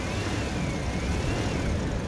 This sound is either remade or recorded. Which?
recorded